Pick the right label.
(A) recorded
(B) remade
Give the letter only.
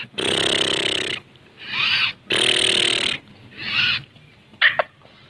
A